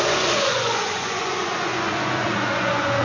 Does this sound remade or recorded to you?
remade